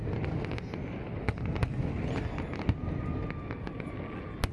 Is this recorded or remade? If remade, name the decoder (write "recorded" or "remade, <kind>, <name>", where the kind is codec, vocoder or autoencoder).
recorded